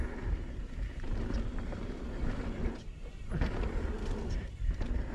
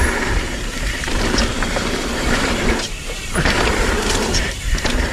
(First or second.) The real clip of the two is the first